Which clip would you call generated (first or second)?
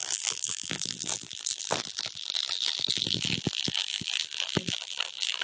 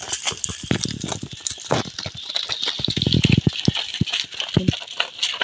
first